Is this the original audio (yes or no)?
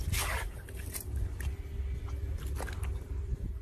yes